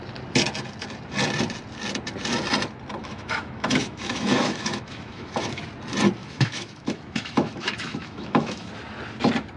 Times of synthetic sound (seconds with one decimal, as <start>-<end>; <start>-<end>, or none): 3.0-5.6; 6.2-8.7

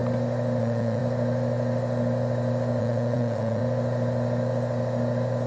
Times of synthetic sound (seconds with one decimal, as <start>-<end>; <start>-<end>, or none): 0.6-1.0; 2.8-3.6

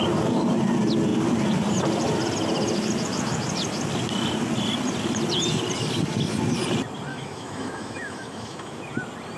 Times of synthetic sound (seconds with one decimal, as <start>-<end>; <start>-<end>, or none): 7.1-8.8

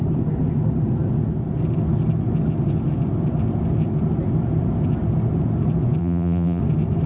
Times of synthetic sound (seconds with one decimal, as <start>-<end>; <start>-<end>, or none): 6.0-6.6